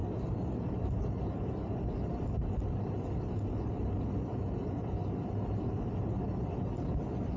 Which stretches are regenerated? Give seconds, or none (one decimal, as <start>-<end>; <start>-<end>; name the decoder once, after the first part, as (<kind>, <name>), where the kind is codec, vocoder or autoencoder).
none